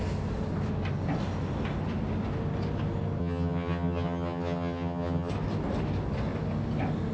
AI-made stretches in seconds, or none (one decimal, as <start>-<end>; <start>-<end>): 3.2-5.3

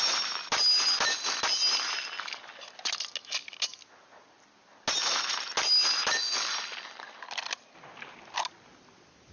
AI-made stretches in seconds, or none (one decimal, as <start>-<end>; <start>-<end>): none

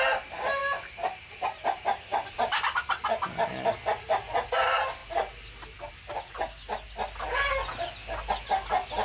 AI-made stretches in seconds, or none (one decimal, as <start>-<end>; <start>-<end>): none